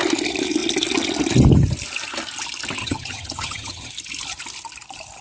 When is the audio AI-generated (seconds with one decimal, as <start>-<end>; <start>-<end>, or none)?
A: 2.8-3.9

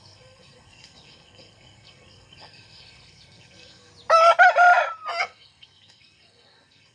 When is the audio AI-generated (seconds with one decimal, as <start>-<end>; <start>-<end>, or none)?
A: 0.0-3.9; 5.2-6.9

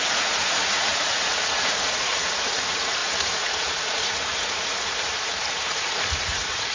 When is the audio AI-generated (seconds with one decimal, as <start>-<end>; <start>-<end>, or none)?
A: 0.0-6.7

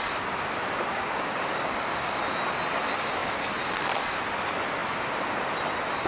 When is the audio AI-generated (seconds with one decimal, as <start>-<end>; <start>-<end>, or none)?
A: 0.9-2.2

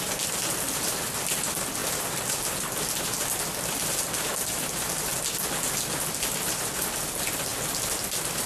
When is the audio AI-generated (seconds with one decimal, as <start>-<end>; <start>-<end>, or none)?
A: none

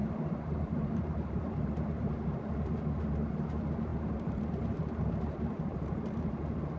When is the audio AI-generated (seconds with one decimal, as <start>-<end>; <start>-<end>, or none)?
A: 0.0-2.2; 3.9-6.3

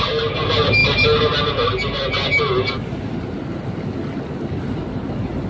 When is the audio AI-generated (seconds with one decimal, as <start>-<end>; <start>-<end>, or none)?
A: none

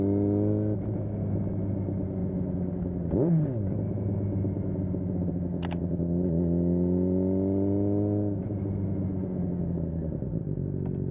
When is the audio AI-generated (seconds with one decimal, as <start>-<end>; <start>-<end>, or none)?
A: none